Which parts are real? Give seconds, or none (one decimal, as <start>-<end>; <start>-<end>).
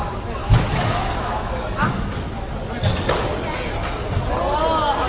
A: 0.0-0.4; 2.5-5.1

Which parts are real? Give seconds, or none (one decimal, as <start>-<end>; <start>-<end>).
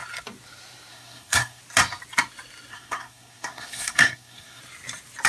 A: 0.0-0.9; 1.6-2.7; 4.6-5.3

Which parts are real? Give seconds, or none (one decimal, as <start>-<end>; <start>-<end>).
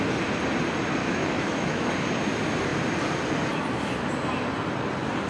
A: 0.0-1.0; 1.9-5.3